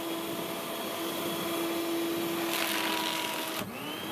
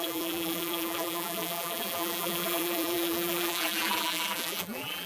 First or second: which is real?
first